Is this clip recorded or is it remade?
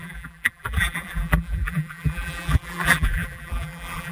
remade